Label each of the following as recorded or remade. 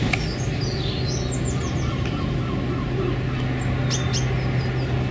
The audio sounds recorded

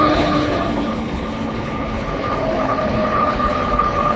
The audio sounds remade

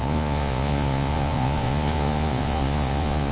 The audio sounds remade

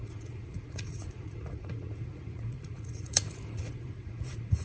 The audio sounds remade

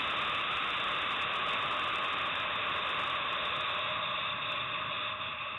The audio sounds recorded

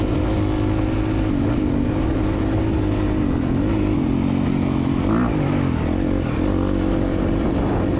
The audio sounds recorded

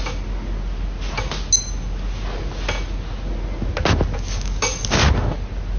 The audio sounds recorded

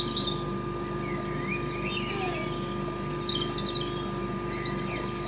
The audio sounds recorded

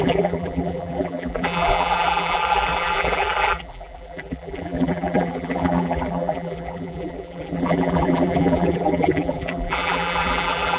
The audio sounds remade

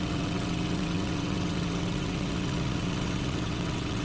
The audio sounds remade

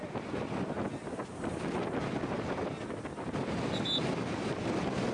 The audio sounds recorded